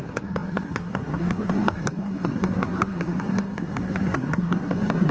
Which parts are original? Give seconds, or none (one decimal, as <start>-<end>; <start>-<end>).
none